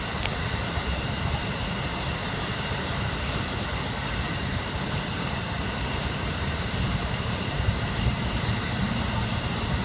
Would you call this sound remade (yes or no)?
yes